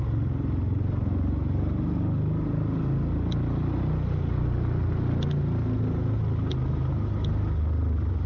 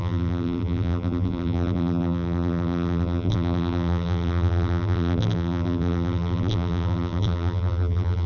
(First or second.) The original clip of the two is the first